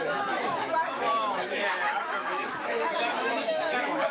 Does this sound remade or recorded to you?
remade